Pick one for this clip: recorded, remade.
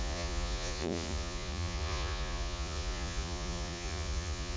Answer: remade